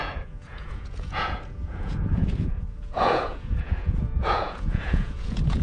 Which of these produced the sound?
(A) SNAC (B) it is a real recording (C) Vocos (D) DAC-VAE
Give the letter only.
C